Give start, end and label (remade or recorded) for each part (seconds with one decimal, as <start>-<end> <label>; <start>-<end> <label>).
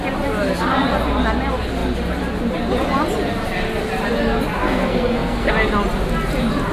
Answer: 0.0-4.6 recorded; 4.6-5.5 remade; 5.5-6.7 recorded